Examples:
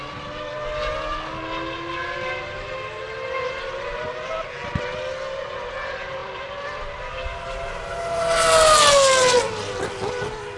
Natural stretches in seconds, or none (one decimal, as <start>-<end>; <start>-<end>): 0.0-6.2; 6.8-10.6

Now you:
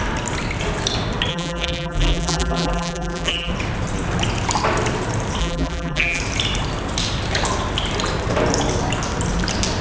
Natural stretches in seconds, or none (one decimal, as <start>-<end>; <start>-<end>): 0.0-1.3; 3.5-5.4; 6.2-9.8

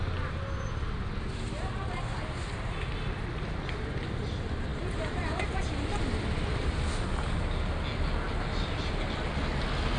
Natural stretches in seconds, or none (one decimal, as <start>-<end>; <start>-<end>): 0.0-4.7; 6.0-10.0

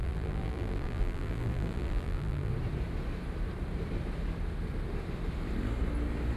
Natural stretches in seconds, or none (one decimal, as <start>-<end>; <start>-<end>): 2.5-6.4

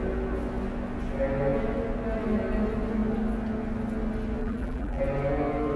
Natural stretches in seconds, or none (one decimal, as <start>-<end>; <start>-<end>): 0.0-4.4; 5.0-5.8